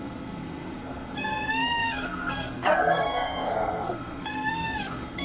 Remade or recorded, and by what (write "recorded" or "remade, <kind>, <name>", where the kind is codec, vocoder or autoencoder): remade, codec, SNAC